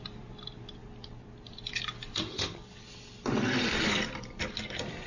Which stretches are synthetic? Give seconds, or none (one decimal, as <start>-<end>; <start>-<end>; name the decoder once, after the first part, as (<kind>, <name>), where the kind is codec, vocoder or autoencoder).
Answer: none